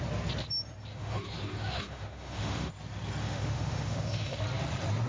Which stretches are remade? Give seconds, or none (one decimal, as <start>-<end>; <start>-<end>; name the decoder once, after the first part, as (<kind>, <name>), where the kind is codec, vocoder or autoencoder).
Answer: 0.9-2.7 (autoencoder, DAC-VAE); 3.2-4.4